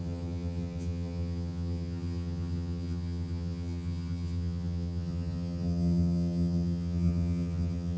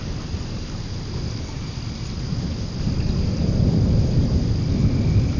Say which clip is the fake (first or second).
first